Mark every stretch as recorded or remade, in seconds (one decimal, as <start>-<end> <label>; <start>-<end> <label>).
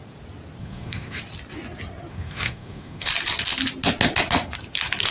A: 0.0-0.6 recorded; 0.6-1.2 remade; 1.2-2.1 recorded; 2.1-3.1 remade; 3.1-5.1 recorded